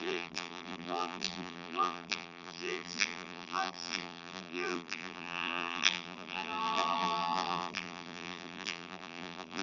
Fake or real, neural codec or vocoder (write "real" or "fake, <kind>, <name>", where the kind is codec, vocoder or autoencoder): fake, vocoder, BigVGAN v2